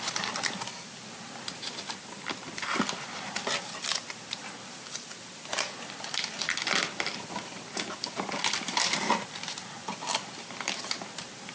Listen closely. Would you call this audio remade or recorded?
remade